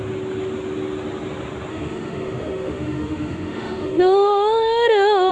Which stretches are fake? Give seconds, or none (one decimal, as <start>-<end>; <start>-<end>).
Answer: 1.7-5.3